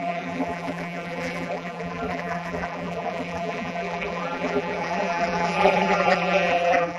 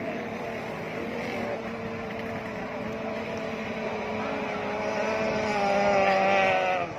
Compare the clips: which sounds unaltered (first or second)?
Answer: second